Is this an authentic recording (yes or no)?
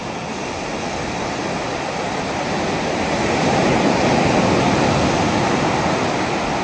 yes